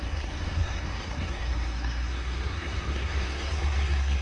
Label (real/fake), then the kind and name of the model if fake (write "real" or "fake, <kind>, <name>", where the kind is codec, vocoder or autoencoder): fake, codec, SNAC